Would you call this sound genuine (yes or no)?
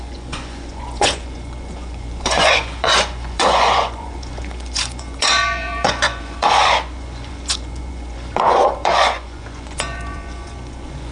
no